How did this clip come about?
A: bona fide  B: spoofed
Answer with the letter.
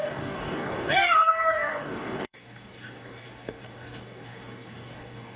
B